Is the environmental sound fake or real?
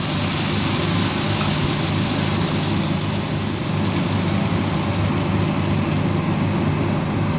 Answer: real